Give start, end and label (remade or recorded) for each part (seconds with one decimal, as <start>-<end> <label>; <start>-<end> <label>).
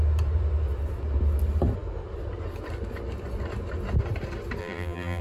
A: 0.0-4.6 recorded; 4.6-5.2 remade